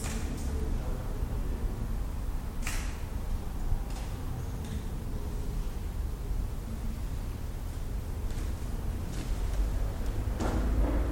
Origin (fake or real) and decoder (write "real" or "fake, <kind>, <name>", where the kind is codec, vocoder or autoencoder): real